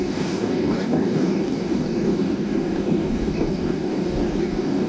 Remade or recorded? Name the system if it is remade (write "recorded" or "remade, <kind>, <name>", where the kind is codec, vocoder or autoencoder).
remade, codec, DAC